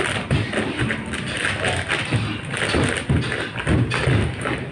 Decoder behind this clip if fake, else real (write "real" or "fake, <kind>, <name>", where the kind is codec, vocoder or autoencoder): real